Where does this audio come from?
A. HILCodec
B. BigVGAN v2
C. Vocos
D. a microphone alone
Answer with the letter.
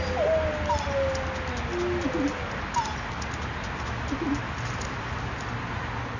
D